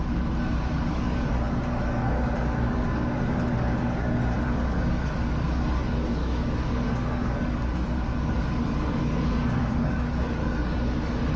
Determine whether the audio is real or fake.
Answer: fake